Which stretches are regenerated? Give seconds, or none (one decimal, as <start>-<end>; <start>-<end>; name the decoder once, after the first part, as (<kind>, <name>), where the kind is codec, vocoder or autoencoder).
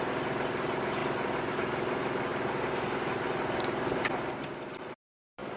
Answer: none